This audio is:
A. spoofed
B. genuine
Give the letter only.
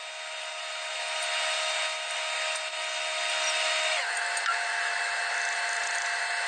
B